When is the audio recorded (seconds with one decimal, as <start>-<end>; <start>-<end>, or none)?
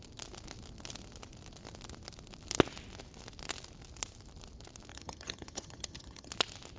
0.0-4.9; 6.3-6.8